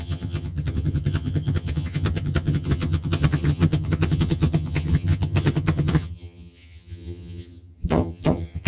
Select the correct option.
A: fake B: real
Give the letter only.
A